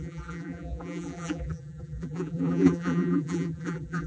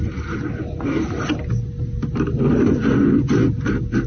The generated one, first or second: first